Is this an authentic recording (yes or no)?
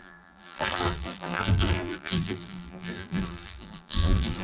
no